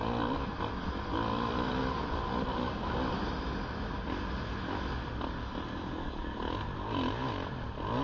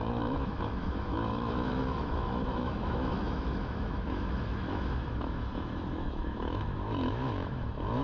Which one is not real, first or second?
second